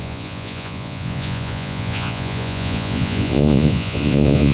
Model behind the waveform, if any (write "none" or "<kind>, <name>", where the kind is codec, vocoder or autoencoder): vocoder, Vocos